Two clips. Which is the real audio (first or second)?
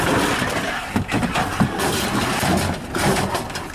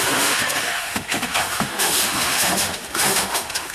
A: first